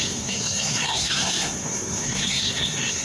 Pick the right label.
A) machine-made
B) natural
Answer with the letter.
A